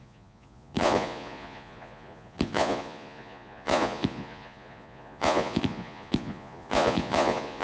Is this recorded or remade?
remade